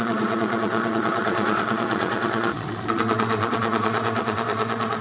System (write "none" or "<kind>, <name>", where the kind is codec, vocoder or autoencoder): vocoder, Vocos